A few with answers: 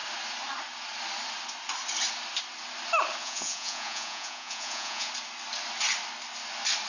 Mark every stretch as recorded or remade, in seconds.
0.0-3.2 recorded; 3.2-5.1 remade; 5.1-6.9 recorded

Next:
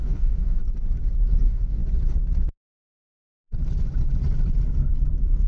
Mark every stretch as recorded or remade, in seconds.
0.0-0.6 remade; 0.6-1.3 recorded; 1.3-1.8 remade; 1.8-5.1 recorded; 5.1-5.5 remade

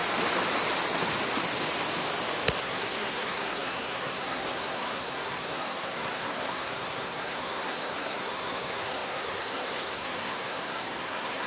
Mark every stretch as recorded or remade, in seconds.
0.0-2.6 recorded; 2.6-11.5 remade

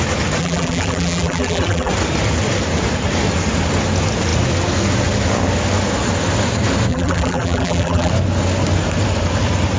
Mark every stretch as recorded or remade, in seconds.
0.0-0.4 recorded; 0.4-1.9 remade; 1.9-6.9 recorded; 6.9-8.1 remade; 8.1-9.8 recorded